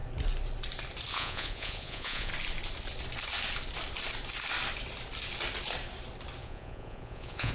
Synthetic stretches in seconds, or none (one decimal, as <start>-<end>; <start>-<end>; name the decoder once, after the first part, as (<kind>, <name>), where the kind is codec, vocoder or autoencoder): 1.1-2.3 (vocoder, Vocos); 6.4-7.5